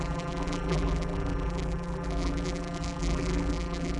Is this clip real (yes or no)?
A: no